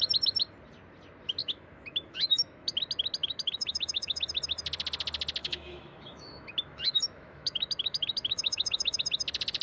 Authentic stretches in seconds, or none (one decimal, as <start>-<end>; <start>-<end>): 0.0-1.4; 2.8-3.2; 4.2-5.4; 9.0-9.6